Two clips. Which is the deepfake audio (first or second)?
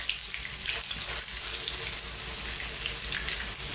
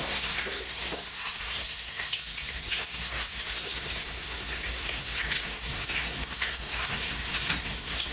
second